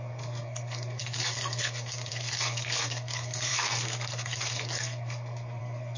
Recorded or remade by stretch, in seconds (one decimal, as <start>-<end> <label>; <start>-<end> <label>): 0.0-6.0 remade